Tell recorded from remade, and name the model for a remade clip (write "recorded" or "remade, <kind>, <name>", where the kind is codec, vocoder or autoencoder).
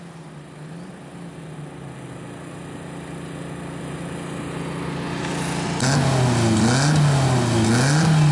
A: recorded